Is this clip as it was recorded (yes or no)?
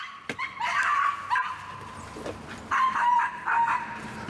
yes